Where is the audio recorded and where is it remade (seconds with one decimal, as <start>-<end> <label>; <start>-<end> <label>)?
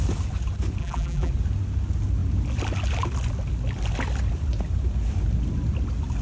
0.0-0.8 recorded; 0.8-1.3 remade; 1.3-6.2 recorded